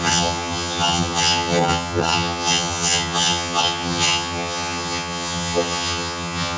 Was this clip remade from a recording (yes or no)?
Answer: yes